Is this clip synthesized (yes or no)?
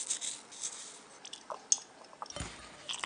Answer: no